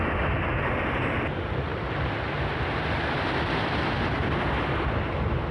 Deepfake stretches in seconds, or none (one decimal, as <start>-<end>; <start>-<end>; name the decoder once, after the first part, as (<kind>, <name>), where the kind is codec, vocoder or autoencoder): none